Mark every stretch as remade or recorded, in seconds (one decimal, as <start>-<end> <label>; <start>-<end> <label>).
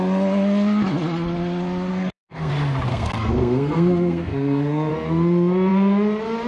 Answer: 0.0-1.9 recorded; 1.9-2.5 remade; 2.5-2.9 recorded; 2.9-4.9 remade; 4.9-6.5 recorded